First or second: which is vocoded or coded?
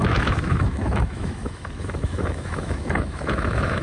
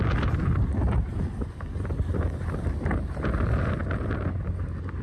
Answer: first